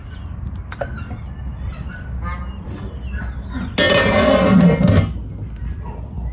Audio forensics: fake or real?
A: real